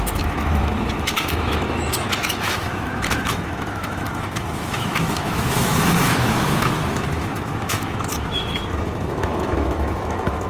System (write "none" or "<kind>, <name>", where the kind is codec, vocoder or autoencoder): autoencoder, DAC-VAE